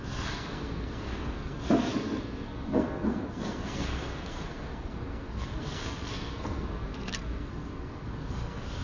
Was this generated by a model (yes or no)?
yes